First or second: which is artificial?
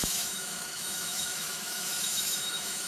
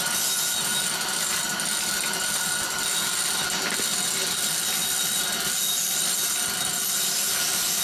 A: first